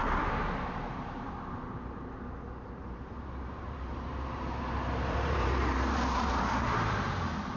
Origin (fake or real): fake